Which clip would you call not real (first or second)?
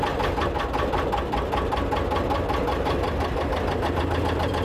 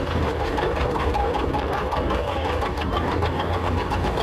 second